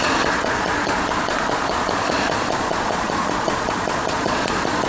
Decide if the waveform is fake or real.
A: fake